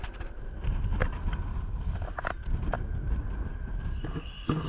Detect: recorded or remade recorded